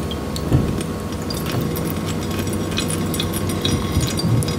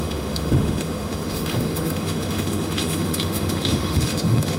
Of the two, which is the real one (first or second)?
first